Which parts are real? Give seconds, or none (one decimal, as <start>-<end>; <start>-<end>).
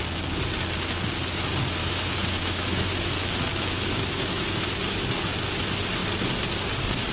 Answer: 0.0-1.8; 4.8-7.1